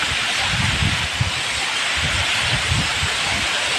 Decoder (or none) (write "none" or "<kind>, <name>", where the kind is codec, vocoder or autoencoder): none